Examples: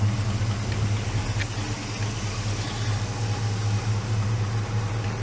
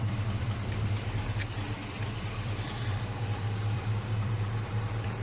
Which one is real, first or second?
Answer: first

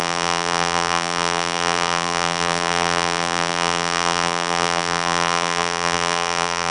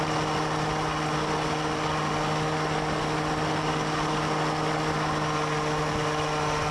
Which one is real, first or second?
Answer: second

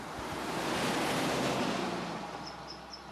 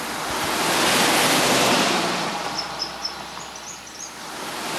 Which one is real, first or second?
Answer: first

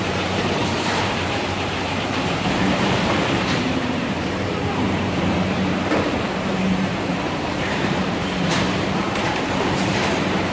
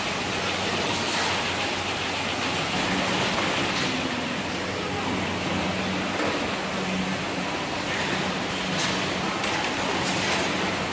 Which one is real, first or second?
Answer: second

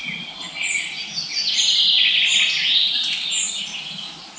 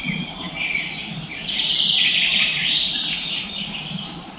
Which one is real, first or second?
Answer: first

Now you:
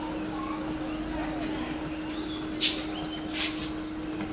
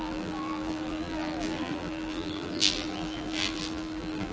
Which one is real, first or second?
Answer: first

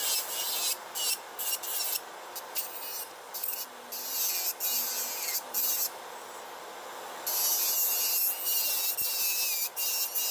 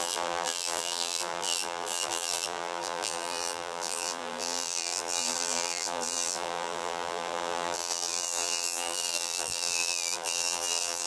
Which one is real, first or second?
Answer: first